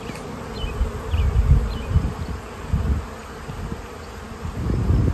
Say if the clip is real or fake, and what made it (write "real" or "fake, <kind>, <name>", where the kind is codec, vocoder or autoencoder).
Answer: real